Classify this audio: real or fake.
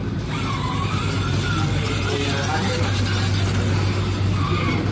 real